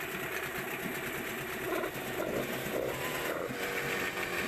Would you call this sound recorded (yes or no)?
yes